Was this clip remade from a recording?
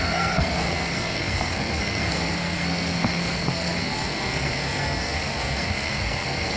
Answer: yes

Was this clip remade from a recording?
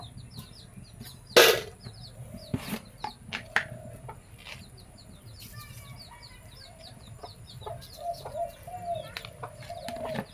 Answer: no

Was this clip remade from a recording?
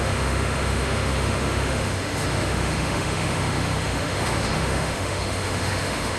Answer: yes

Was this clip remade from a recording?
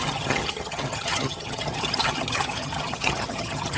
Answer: yes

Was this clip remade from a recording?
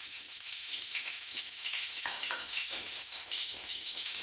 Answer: yes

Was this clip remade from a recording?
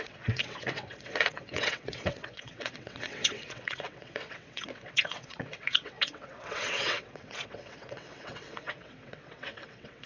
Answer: yes